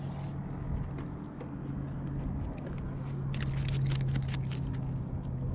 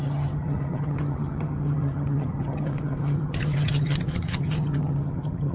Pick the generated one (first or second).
second